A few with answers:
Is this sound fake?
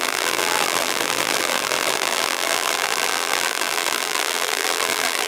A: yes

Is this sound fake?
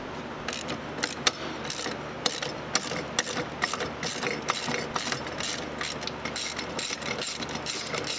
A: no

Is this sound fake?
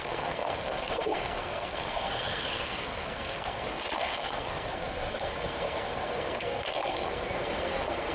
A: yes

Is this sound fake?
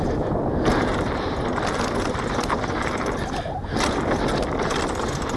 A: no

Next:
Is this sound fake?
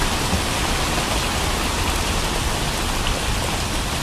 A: no